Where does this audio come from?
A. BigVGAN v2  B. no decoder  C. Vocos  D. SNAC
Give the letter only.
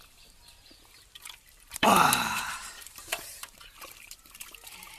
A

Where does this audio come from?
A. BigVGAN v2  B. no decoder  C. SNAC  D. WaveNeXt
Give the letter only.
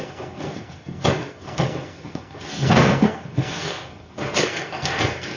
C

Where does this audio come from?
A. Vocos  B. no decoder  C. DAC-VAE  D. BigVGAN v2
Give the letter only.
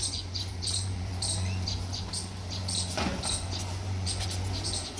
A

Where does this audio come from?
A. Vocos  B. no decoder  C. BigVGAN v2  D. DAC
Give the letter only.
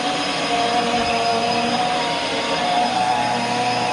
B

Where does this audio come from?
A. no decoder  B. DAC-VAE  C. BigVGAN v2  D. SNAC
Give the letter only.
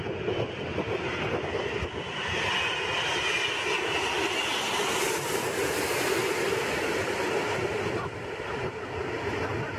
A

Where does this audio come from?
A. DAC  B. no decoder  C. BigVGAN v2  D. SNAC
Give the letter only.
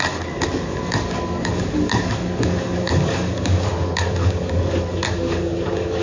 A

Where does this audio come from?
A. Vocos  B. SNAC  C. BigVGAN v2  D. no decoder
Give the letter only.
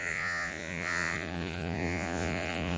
A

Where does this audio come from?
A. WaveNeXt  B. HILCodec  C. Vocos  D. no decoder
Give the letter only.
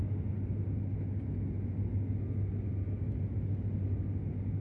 D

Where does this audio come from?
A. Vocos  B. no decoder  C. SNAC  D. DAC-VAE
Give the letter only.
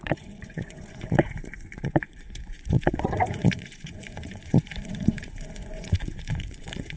A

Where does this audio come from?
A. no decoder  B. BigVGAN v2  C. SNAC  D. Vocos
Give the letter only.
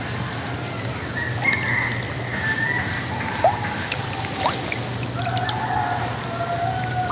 A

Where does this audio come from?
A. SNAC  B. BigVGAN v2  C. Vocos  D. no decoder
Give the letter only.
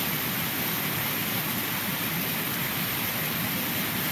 D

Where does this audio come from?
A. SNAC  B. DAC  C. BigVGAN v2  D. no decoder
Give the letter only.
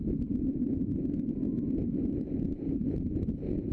D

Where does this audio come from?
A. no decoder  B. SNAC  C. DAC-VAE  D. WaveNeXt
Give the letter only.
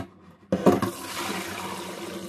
A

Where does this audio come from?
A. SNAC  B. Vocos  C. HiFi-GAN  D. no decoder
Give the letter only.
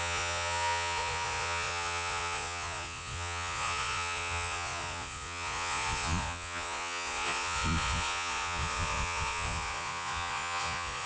B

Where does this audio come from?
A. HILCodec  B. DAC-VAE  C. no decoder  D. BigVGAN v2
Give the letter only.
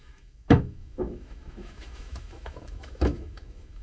B